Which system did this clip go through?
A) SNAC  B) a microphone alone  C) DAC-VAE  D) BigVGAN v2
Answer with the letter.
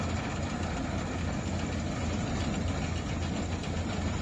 B